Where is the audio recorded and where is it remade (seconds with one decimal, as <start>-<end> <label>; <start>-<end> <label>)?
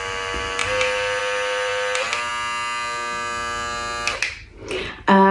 0.0-5.3 recorded